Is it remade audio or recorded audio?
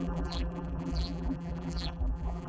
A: remade